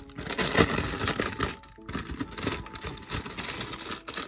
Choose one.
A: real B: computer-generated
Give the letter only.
A